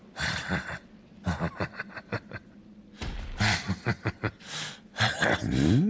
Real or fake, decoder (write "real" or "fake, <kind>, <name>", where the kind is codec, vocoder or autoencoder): fake, vocoder, BigVGAN v2